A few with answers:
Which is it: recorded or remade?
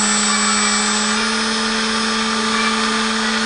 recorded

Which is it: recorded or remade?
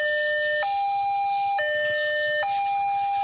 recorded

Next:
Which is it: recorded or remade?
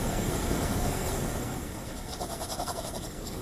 remade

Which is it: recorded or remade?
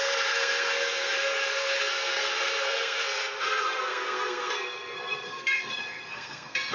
remade